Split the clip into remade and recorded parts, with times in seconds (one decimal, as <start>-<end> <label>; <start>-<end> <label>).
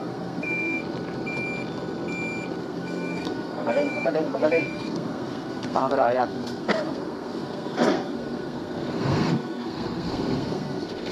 0.0-0.8 remade; 0.8-2.6 recorded; 2.6-11.1 remade